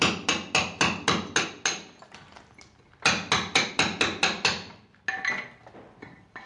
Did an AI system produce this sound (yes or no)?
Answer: no